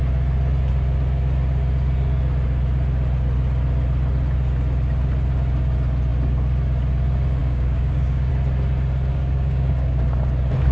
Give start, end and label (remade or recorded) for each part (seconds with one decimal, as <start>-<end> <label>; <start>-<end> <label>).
0.0-7.4 recorded; 7.4-8.3 remade; 8.3-9.1 recorded; 9.1-10.0 remade; 10.0-10.7 recorded